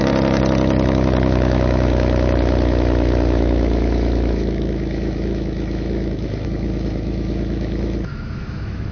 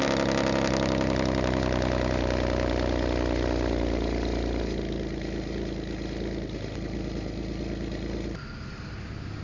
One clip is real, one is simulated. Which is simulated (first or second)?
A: first